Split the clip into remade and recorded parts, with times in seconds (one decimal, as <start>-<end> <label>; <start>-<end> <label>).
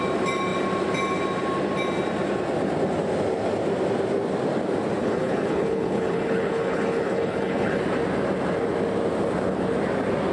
0.0-5.0 recorded; 5.0-7.8 remade; 7.8-10.3 recorded